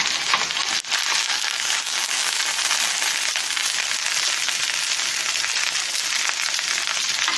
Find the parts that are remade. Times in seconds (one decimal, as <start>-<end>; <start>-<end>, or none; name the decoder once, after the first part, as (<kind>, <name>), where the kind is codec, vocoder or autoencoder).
1.2-2.4 (codec, DAC)